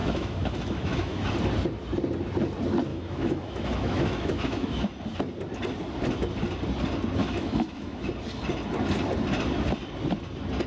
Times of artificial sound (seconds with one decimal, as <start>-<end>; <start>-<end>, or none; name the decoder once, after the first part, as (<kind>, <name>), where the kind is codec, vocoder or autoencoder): 0.0-1.3 (autoencoder, DAC-VAE); 2.9-4.9; 7.2-8.1

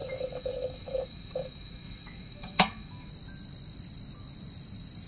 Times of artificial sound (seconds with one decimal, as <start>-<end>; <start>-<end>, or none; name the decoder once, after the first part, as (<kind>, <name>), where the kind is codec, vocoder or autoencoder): 0.0-3.1 (autoencoder, DAC-VAE)

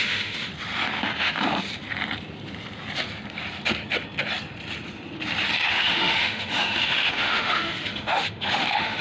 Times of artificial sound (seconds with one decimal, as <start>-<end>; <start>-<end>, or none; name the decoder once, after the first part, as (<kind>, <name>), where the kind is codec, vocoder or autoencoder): 0.0-0.5 (autoencoder, DAC-VAE); 5.7-9.0

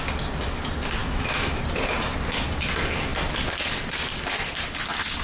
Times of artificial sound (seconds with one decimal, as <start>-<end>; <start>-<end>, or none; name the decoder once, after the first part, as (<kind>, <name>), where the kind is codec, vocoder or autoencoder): 1.0-1.6 (autoencoder, DAC-VAE)

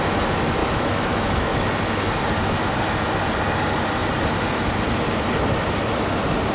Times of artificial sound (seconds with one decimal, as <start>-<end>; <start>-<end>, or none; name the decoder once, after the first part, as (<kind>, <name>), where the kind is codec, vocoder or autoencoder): 0.6-1.7 (autoencoder, DAC-VAE)

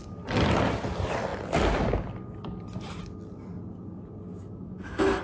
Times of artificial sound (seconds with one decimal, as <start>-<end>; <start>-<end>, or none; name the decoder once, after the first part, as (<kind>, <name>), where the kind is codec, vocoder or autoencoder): 4.3-5.2 (autoencoder, DAC-VAE)

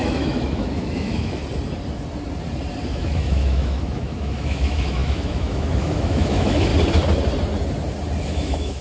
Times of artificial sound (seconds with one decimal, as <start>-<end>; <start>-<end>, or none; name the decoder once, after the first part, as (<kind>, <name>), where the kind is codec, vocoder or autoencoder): 0.0-1.4 (autoencoder, DAC-VAE); 2.9-6.7; 8.2-8.8

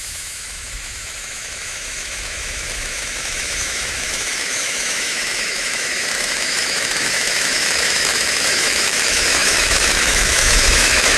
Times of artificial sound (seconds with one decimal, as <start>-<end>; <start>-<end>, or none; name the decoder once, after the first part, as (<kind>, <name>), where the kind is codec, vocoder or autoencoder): 0.0-11.2 (autoencoder, DAC-VAE)